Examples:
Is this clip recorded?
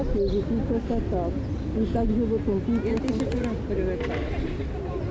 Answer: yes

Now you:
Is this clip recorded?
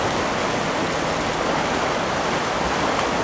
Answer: yes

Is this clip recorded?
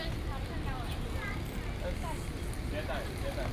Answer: yes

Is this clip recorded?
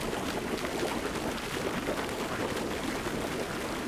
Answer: yes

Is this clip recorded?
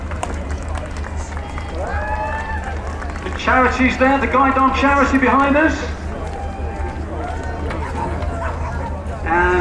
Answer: yes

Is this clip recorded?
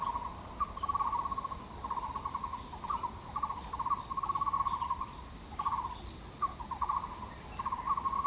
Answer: yes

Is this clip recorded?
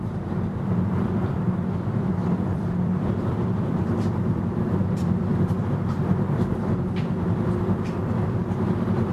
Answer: no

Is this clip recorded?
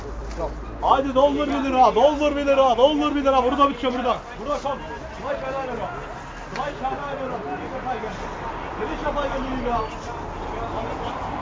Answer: yes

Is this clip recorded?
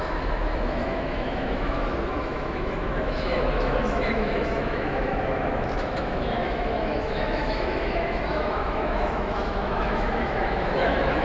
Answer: no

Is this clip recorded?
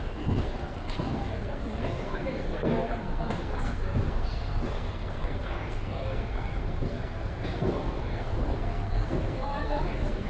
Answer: no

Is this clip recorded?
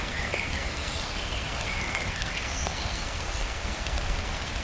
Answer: no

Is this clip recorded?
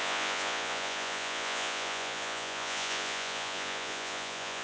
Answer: no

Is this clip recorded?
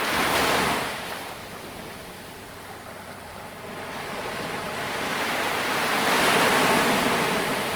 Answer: yes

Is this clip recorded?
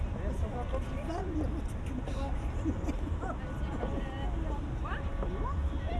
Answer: yes